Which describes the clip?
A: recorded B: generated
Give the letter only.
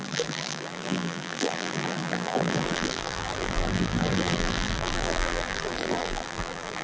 B